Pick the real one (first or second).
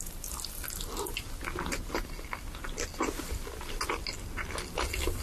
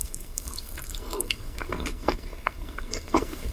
first